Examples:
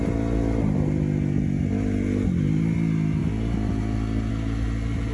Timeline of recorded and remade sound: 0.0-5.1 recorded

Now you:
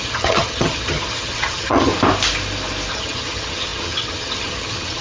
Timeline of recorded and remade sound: 0.0-1.9 remade; 1.9-2.9 recorded; 2.9-5.0 remade